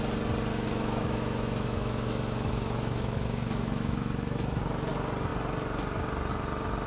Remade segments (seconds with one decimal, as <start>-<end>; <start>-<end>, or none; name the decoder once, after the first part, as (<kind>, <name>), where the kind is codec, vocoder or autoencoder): 0.5-4.6 (autoencoder, DAC-VAE)